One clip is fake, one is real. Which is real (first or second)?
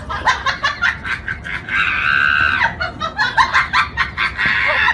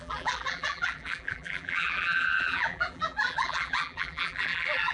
first